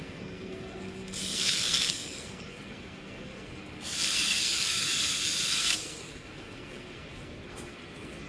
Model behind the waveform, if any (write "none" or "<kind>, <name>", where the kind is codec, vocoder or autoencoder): codec, SNAC